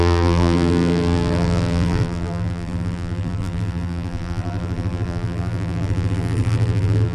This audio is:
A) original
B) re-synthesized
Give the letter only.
B